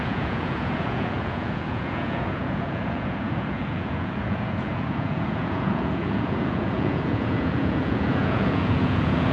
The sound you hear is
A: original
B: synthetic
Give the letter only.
B